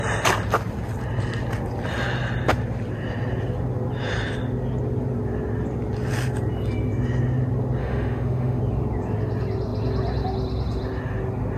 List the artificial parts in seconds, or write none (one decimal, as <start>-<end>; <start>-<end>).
7.8-8.6